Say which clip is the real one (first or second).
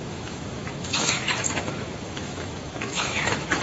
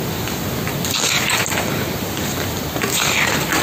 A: second